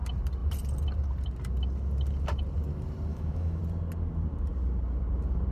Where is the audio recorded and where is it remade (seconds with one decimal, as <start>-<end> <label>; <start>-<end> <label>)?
0.0-3.1 recorded; 3.1-3.6 remade; 3.6-5.5 recorded